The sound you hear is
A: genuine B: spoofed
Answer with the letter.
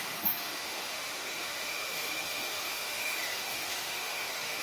B